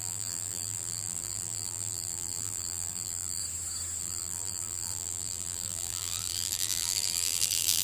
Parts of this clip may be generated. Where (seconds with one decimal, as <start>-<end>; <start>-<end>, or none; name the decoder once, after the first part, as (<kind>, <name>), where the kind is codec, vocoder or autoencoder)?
0.0-3.4 (vocoder, BigVGAN v2); 4.0-7.8